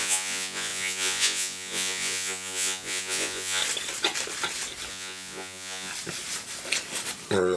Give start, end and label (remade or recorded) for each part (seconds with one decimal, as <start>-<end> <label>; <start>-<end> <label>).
0.0-3.6 remade; 3.6-4.9 recorded; 4.9-5.9 remade; 5.9-7.6 recorded